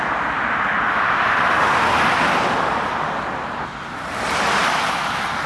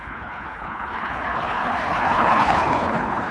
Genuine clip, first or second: first